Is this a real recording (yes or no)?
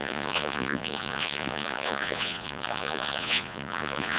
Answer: no